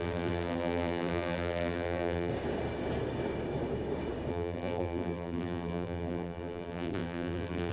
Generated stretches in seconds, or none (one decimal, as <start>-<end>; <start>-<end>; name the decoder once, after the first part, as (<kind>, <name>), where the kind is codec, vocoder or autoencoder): 0.0-2.3 (vocoder, BigVGAN v2); 4.3-7.7